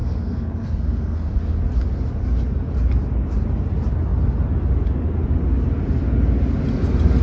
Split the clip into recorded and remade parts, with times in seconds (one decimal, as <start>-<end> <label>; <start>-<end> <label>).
0.0-1.4 remade; 1.4-7.2 recorded